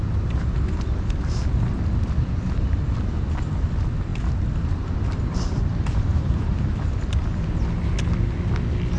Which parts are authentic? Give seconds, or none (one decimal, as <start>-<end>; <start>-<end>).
0.0-5.7; 6.3-9.0